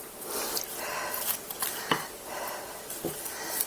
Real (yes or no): yes